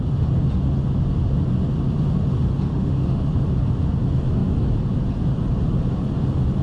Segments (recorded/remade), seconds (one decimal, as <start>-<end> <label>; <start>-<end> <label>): 0.0-2.7 recorded; 2.7-3.2 remade; 3.2-6.6 recorded